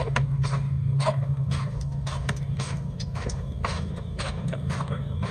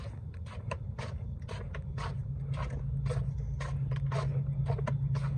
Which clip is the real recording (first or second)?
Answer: second